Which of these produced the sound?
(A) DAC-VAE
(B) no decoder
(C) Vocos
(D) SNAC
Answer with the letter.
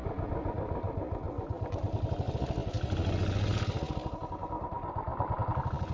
B